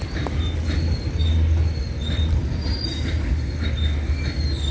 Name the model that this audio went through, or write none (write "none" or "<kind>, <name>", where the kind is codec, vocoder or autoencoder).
none